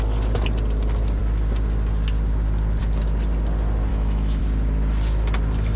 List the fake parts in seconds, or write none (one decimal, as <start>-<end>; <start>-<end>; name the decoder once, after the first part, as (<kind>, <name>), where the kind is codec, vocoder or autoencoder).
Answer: 3.9-4.4 (autoencoder, DAC-VAE)